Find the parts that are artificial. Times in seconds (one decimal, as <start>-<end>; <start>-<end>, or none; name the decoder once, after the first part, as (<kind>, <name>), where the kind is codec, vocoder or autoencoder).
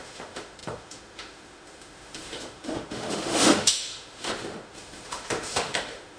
0.0-6.2 (autoencoder, DAC-VAE)